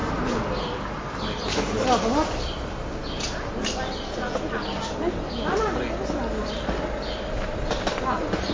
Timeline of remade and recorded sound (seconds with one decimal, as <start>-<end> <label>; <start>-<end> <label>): 0.0-8.5 recorded